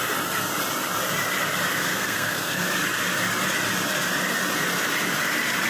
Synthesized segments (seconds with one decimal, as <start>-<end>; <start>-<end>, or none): 1.7-2.7